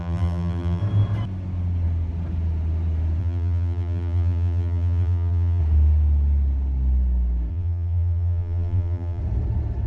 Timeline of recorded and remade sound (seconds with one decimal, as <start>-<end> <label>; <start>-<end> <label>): 0.0-0.8 remade; 0.8-3.2 recorded; 3.2-5.6 remade; 5.6-7.5 recorded; 7.5-9.2 remade; 9.2-9.9 recorded